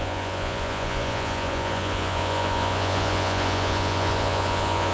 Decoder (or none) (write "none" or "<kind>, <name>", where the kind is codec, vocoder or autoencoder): vocoder, Vocos